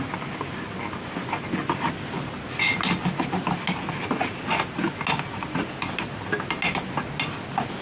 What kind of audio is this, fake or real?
real